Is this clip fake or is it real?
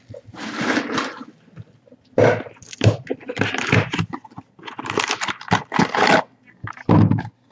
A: real